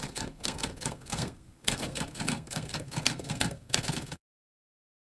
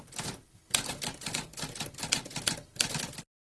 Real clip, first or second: second